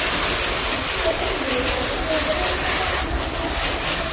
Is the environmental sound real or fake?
real